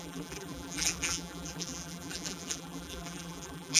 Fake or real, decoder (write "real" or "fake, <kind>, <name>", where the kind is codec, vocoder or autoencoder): fake, vocoder, BigVGAN v2